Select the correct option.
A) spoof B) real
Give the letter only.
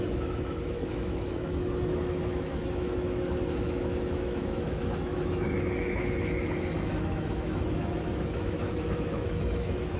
A